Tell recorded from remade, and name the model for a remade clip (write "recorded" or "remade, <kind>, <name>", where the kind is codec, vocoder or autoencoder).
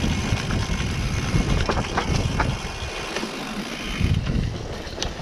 recorded